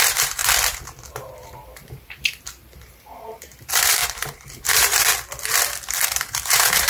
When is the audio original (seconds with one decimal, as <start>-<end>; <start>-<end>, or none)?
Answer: 0.4-1.1; 5.1-5.9

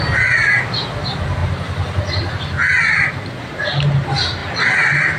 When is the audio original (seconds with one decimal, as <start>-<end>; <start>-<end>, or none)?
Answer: 0.0-5.2

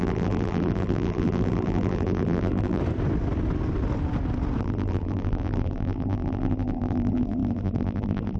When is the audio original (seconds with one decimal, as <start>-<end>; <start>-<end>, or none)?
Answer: 2.8-4.6